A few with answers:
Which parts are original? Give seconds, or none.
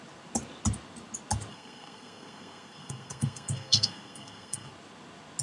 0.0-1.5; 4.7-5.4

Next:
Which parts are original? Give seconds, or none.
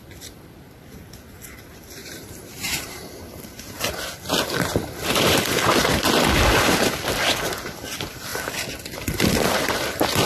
0.0-2.0; 4.0-10.3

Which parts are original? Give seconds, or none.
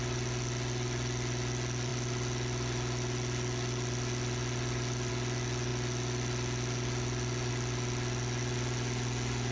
0.0-9.5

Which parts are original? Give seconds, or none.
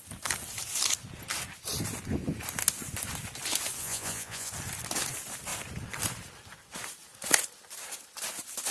0.0-3.8; 4.5-8.7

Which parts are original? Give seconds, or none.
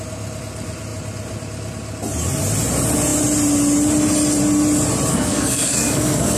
0.0-5.1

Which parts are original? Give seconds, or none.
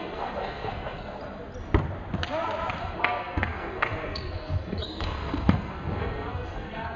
1.2-2.8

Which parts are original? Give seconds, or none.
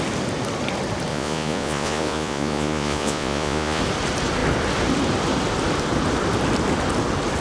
0.0-1.1; 3.8-7.4